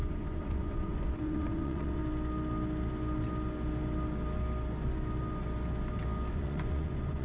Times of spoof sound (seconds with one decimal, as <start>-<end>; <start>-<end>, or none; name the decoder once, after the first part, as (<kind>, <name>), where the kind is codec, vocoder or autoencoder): 0.0-2.0 (vocoder, Vocos); 6.3-7.2